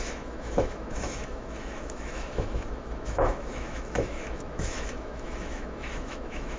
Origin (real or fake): fake